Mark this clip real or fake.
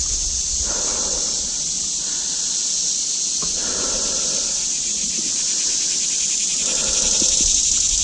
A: real